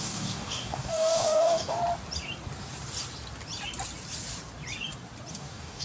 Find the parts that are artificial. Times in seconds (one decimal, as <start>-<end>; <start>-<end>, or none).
0.0-1.8; 5.3-5.8